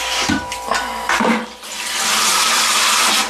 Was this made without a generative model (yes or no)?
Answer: yes